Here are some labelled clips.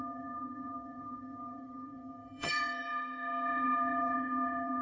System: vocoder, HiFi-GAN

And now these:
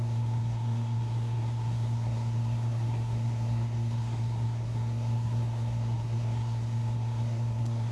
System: codec, SNAC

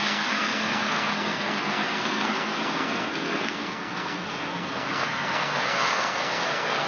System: codec, SNAC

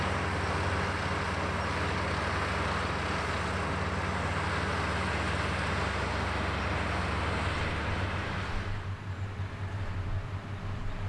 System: none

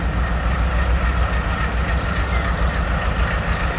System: none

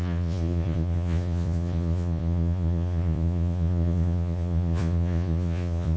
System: vocoder, Vocos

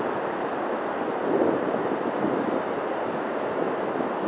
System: none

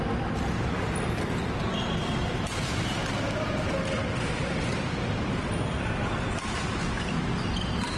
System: none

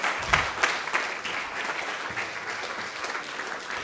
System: none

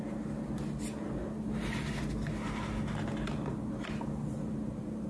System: none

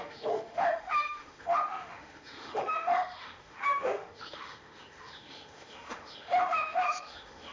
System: autoencoder, DAC-VAE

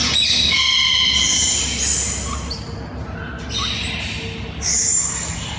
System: none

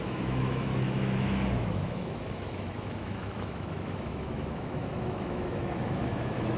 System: autoencoder, DAC-VAE